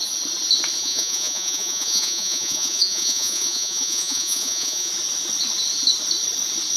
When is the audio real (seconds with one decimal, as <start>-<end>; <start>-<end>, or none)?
0.0-0.8; 4.9-6.8